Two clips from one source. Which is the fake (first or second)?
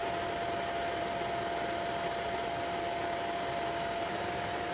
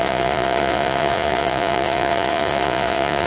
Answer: second